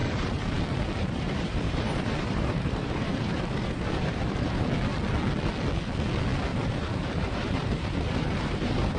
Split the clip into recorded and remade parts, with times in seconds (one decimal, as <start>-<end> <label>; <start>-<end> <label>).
0.0-0.5 remade; 0.5-1.0 recorded; 1.0-4.6 remade; 4.6-6.5 recorded; 6.5-9.0 remade